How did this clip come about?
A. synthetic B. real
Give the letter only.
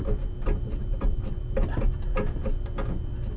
B